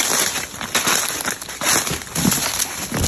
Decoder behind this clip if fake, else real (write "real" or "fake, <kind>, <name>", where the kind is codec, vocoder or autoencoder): real